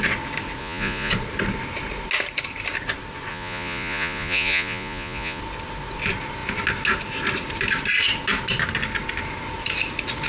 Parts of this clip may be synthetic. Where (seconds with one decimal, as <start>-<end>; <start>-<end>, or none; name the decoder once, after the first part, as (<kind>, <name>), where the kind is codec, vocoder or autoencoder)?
0.6-1.1 (vocoder, Vocos); 3.3-5.4